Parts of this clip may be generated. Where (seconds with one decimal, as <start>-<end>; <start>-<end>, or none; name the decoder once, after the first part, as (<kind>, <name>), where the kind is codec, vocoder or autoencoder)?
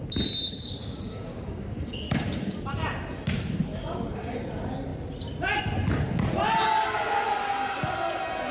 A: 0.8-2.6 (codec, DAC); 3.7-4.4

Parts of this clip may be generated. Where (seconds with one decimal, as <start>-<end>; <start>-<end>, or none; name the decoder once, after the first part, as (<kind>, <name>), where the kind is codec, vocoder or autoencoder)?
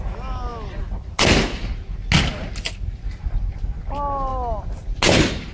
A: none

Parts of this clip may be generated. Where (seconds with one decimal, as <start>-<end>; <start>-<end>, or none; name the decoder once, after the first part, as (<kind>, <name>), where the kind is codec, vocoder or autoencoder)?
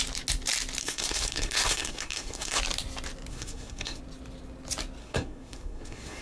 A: 0.8-2.6 (codec, SNAC); 3.3-4.0; 5.0-6.2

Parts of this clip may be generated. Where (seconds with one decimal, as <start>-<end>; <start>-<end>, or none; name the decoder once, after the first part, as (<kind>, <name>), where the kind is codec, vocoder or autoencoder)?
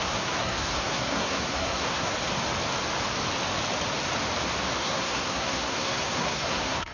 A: 0.0-2.1 (codec, SNAC); 4.8-6.9